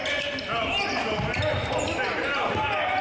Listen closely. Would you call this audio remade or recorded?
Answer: recorded